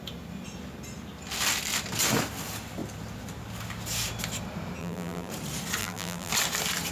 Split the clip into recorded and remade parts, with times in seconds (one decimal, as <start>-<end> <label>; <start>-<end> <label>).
0.0-4.8 recorded; 4.8-5.3 remade; 5.3-5.8 recorded; 5.8-6.3 remade; 6.3-6.9 recorded